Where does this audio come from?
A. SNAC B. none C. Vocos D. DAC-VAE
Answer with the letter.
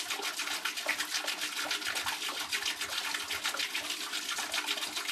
B